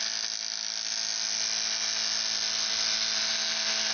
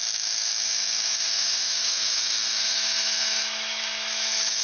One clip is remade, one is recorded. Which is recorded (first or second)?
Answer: first